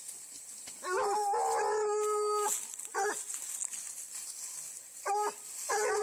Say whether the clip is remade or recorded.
recorded